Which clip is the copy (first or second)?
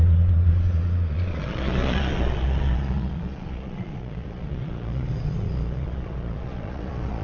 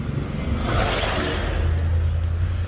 first